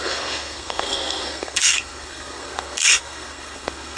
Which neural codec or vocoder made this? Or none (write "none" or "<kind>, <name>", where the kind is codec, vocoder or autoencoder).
codec, SNAC